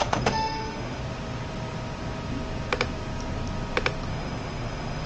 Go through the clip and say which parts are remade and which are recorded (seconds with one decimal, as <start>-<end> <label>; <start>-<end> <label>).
0.0-1.0 remade; 1.0-4.1 recorded; 4.1-5.1 remade